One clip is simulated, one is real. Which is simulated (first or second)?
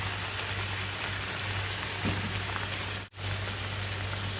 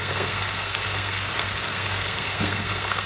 second